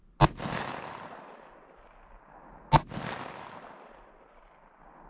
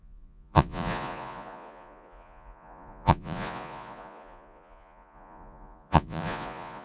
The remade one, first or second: second